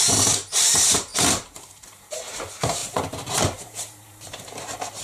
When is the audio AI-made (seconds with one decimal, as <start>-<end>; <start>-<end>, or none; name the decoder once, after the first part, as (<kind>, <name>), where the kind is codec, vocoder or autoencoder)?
0.0-5.0 (vocoder, BigVGAN v2)